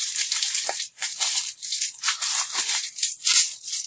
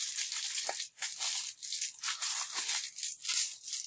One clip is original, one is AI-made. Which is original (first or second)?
second